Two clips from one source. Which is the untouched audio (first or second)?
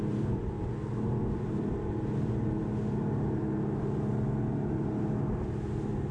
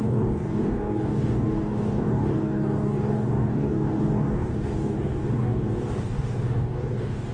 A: first